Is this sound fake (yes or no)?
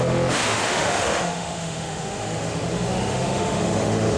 yes